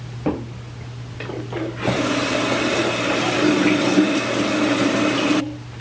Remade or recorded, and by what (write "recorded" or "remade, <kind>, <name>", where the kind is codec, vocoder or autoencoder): remade, vocoder, BigVGAN v2